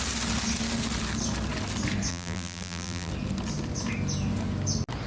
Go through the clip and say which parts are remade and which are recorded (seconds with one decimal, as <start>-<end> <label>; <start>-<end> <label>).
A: 0.0-2.1 recorded; 2.1-3.1 remade; 3.1-5.1 recorded